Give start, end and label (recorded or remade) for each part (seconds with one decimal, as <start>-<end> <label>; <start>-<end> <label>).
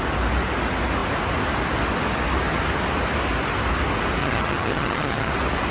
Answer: 0.0-4.2 recorded; 4.2-5.3 remade; 5.3-5.7 recorded